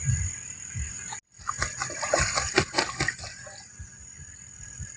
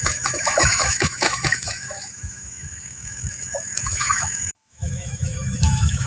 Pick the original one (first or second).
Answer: first